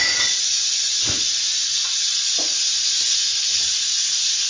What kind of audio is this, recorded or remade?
recorded